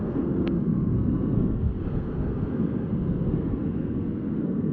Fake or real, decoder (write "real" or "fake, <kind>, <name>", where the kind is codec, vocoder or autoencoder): fake, codec, SNAC